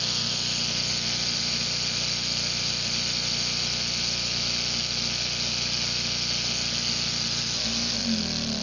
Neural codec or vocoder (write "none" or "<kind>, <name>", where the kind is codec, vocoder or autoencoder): none